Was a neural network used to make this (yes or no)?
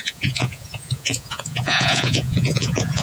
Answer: yes